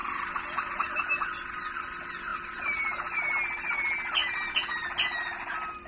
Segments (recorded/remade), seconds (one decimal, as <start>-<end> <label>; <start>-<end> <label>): 0.0-5.9 recorded